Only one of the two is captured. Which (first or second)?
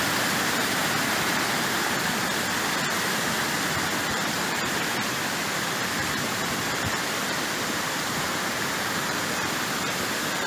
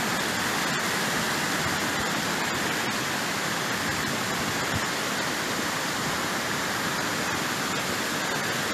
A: second